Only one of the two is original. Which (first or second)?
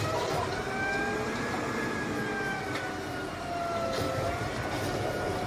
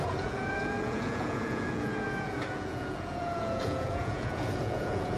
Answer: first